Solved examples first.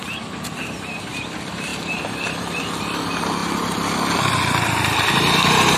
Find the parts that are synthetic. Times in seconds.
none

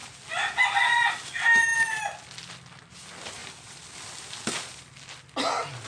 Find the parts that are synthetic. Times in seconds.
none

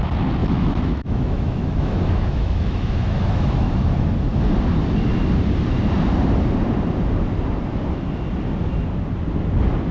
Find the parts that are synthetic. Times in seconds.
0.4-3.7 (autoencoder, DAC-VAE)

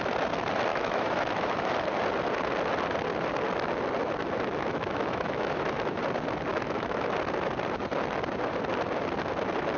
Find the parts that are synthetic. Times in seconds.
0.7-1.9 (autoencoder, DAC-VAE); 4.2-6.0; 6.5-7.1

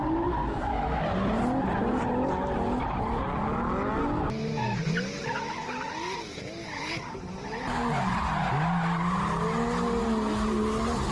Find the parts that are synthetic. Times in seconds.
0.4-1.0 (autoencoder, DAC-VAE)

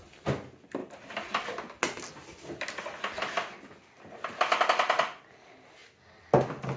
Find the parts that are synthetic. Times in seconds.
none